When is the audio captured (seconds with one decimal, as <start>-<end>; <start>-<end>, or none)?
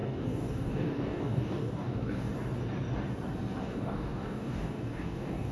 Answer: 2.3-3.6